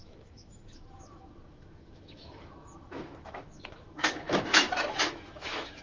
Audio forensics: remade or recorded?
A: remade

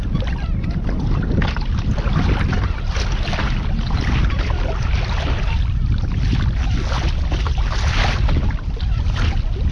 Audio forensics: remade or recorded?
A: recorded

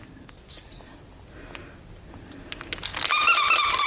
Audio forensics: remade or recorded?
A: recorded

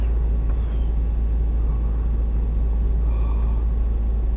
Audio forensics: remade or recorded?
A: recorded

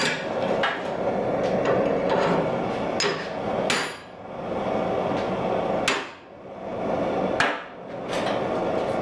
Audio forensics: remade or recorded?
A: recorded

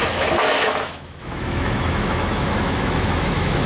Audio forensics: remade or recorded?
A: remade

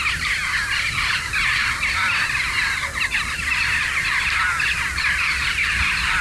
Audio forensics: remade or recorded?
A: recorded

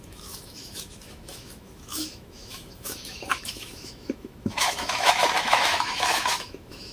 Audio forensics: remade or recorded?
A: remade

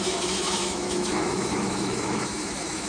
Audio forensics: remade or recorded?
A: remade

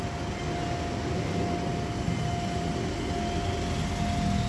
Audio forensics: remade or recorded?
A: recorded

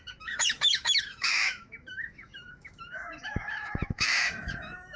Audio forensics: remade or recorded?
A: remade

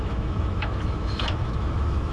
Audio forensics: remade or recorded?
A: remade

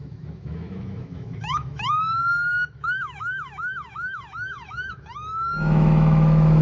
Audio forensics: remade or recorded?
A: remade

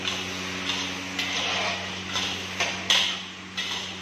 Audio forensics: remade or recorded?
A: recorded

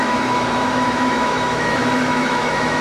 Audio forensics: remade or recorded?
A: remade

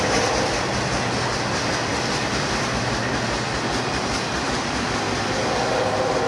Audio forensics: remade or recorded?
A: recorded